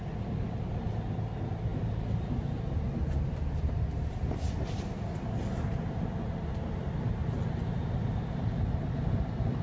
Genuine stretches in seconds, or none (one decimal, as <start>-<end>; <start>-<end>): 0.0-9.6